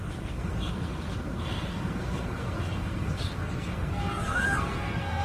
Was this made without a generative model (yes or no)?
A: no